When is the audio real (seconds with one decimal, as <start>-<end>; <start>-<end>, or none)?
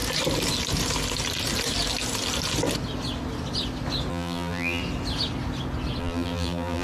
0.0-4.1; 4.8-6.0